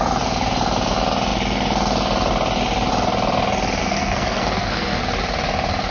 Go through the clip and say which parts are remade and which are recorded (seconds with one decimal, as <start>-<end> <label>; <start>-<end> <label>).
0.0-3.8 recorded; 3.8-5.0 remade; 5.0-5.9 recorded